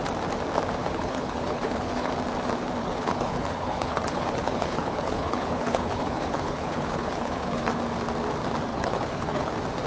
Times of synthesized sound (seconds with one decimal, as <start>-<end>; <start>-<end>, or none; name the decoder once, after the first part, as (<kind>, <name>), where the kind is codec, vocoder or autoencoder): 0.8-2.1 (codec, HILCodec); 2.8-7.8; 8.7-9.5